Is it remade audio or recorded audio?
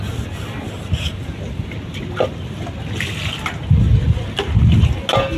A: recorded